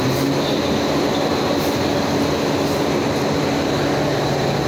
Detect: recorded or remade recorded